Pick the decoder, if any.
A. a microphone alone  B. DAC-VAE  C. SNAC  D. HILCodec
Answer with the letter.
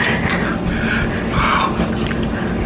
A